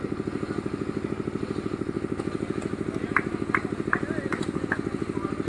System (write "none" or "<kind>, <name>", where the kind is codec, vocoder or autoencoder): none